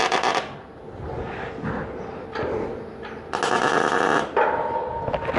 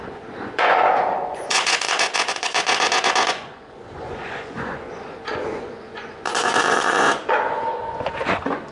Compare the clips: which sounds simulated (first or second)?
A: second